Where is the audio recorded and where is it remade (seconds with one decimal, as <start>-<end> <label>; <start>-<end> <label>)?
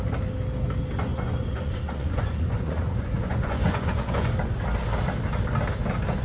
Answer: 0.0-1.1 recorded; 1.1-4.3 remade; 4.3-6.2 recorded